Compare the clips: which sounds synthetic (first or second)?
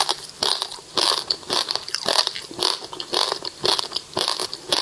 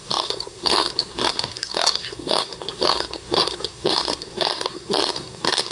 second